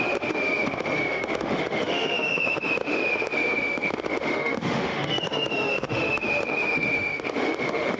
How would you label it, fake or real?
fake